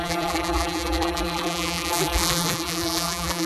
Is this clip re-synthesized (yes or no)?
yes